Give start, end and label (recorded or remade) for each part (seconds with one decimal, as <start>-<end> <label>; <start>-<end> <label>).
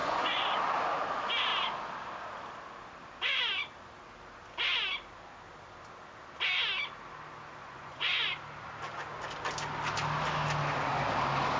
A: 0.0-0.5 remade; 0.5-7.6 recorded; 7.6-8.3 remade; 8.3-11.6 recorded